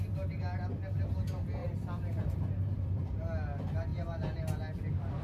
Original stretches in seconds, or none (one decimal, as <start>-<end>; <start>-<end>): 0.0-1.6; 2.2-5.2

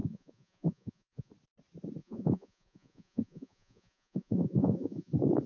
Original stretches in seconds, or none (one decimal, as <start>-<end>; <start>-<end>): 1.3-2.0; 5.1-5.5